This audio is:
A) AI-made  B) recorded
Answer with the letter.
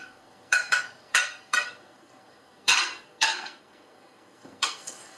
A